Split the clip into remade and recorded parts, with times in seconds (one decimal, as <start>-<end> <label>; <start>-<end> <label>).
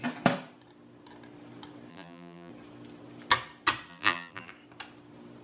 0.0-1.9 recorded; 1.9-2.5 remade; 2.5-3.9 recorded; 3.9-4.5 remade; 4.5-5.4 recorded